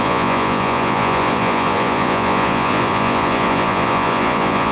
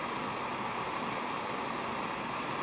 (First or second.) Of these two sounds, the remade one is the first